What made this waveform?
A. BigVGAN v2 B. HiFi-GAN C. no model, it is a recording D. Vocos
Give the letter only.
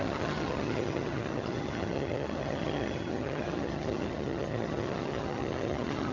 B